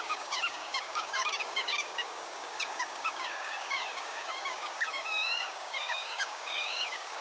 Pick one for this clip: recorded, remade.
remade